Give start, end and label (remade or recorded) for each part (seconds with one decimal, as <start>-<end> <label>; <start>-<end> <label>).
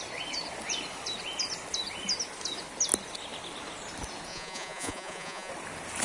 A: 0.0-4.3 recorded; 4.3-5.5 remade; 5.5-6.0 recorded